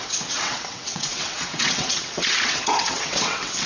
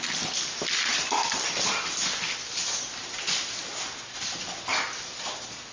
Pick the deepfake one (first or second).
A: first